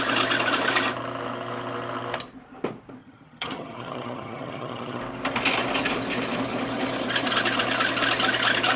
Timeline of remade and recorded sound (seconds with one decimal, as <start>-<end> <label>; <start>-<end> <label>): 0.0-3.0 recorded; 3.0-5.0 remade; 5.0-8.8 recorded